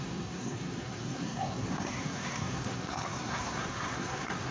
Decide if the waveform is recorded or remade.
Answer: remade